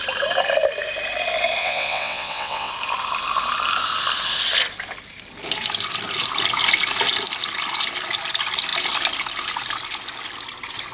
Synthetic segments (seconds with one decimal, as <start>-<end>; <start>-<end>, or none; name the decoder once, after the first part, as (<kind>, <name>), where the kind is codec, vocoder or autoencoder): 1.6-2.7 (vocoder, WaveNeXt)